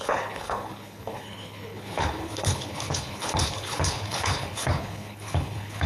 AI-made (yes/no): yes